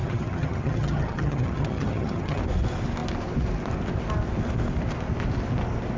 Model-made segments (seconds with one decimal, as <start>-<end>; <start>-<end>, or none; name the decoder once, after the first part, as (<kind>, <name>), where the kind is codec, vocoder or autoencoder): 0.0-2.4 (vocoder, HiFi-GAN)

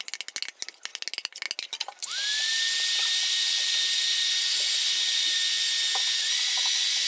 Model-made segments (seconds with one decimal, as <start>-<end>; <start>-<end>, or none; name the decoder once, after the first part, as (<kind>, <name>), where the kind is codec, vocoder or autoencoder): none

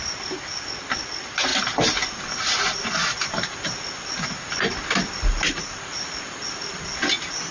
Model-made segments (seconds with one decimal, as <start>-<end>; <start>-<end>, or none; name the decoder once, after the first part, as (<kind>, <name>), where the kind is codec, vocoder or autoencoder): none

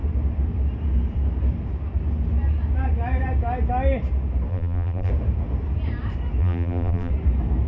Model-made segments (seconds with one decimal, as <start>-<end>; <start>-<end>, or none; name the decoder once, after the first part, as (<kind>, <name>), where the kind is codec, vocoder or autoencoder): 4.5-5.1 (vocoder, BigVGAN v2); 6.4-7.1

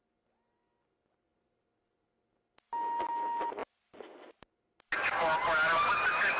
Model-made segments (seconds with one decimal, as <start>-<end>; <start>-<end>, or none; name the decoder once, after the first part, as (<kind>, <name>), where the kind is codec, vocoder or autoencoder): none

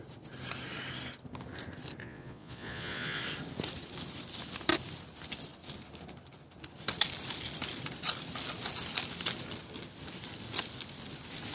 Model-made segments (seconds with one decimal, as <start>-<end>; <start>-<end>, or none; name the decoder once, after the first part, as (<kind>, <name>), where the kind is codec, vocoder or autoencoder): 2.0-3.2 (vocoder, Vocos)

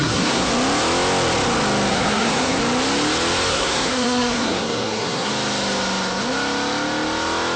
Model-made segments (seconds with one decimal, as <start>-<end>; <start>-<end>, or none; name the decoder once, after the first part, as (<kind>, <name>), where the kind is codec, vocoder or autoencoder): 0.0-0.5 (codec, SNAC); 1.9-2.6; 3.5-5.3

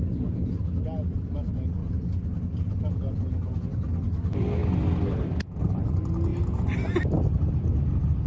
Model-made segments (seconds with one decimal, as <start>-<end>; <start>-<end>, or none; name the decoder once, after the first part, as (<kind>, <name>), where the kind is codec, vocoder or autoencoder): none